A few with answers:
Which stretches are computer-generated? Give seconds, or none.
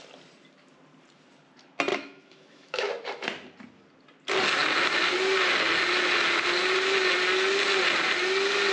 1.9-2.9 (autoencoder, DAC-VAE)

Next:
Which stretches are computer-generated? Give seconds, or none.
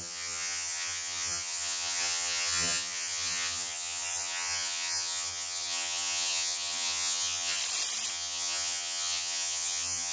0.0-7.6 (vocoder, HiFi-GAN); 8.1-10.1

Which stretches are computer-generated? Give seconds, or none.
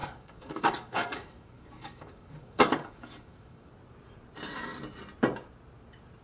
0.0-3.7 (codec, DAC)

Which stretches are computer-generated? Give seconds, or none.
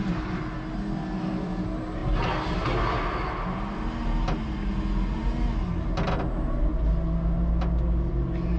none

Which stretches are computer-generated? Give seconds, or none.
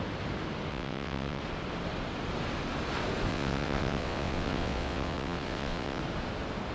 0.7-1.4 (vocoder, WaveNeXt); 3.3-6.0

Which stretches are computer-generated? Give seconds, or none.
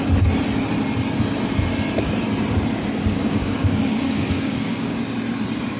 3.1-5.0 (codec, DAC)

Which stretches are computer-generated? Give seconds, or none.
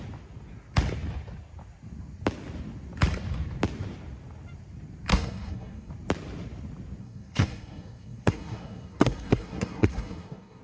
5.1-5.9 (codec, SNAC); 7.0-10.6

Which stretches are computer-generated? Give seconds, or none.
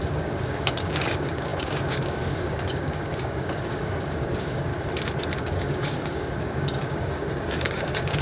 0.0-4.7 (codec, DAC); 5.4-8.2